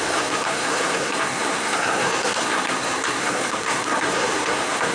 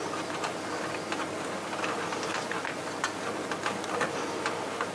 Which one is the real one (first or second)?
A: second